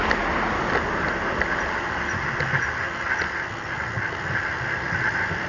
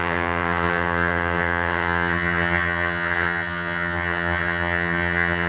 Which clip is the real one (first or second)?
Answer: first